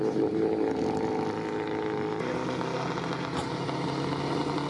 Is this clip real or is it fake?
real